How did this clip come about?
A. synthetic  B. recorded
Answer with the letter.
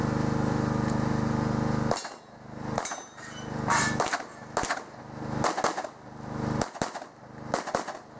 B